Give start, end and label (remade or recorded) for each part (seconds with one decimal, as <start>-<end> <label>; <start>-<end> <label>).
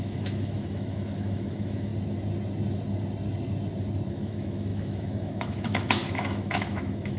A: 0.0-1.9 remade; 1.9-4.1 recorded; 4.1-7.2 remade